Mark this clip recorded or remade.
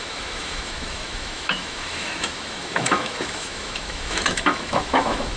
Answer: remade